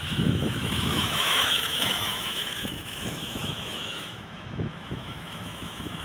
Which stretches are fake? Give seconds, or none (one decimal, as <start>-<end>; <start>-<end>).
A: 0.0-6.0